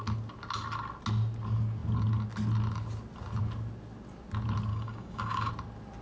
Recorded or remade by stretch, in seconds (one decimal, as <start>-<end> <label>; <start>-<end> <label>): 0.0-4.7 recorded; 4.7-5.5 remade; 5.5-6.0 recorded